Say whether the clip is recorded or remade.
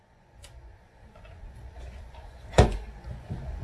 remade